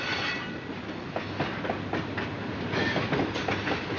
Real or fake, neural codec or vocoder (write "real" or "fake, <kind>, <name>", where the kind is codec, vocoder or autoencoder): real